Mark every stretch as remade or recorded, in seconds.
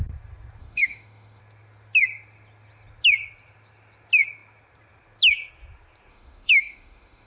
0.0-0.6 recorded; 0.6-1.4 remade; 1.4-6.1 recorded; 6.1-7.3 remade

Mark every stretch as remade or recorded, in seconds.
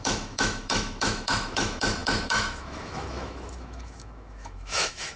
0.0-5.2 remade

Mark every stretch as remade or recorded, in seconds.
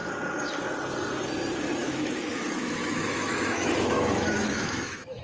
0.0-1.8 recorded; 1.8-5.2 remade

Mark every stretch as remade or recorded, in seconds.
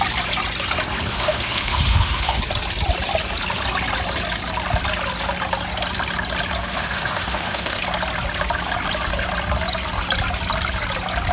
0.0-1.1 recorded; 1.1-2.4 remade; 2.4-6.7 recorded; 6.7-7.8 remade; 7.8-11.3 recorded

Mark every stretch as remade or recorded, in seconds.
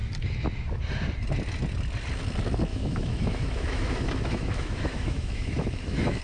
0.0-2.7 recorded; 2.7-6.2 remade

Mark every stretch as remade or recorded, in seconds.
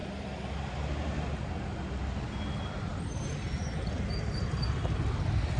0.0-5.6 recorded